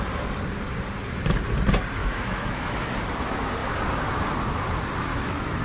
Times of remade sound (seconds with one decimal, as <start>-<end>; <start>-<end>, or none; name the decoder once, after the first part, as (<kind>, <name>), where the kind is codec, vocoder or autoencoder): 2.0-2.8 (autoencoder, DAC-VAE); 5.1-5.6